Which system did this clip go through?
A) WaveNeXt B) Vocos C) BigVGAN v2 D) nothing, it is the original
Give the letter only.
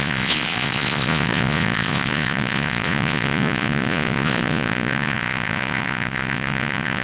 B